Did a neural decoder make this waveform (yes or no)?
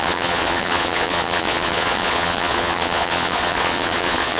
yes